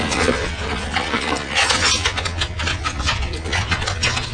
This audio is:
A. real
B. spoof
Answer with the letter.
B